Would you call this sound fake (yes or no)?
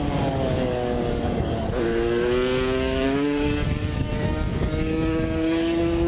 yes